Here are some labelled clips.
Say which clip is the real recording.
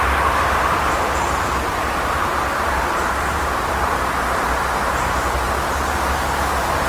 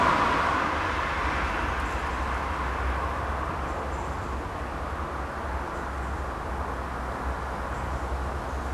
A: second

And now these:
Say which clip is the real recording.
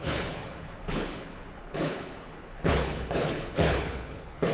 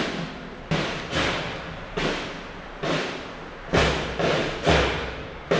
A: second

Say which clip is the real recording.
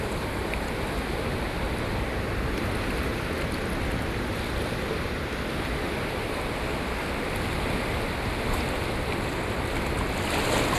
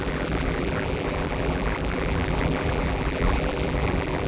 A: first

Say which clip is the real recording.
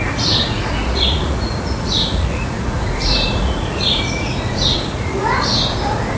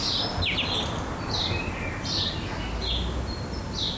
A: second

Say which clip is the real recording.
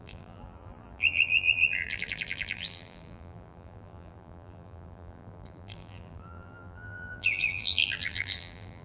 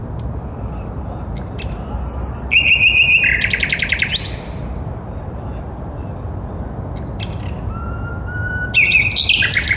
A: second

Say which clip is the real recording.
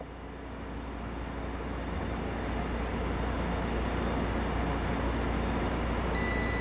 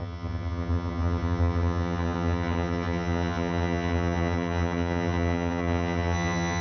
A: first